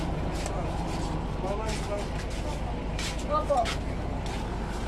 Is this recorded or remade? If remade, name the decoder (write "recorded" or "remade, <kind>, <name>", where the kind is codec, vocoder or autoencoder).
recorded